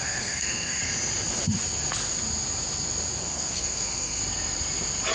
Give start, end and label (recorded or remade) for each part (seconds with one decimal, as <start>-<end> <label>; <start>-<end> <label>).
0.0-0.8 remade; 0.8-3.2 recorded; 3.2-4.2 remade; 4.2-5.1 recorded